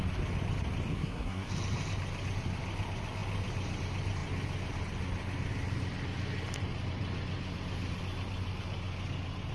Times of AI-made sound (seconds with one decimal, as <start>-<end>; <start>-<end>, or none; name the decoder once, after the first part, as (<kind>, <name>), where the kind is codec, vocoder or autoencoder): 0.9-1.5 (codec, SNAC)